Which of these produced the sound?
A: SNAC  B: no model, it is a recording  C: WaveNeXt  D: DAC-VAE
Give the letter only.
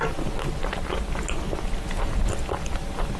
B